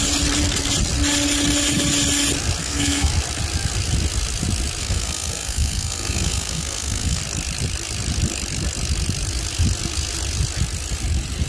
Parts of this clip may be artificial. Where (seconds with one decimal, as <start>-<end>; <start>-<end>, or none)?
2.6-3.1; 4.8-7.2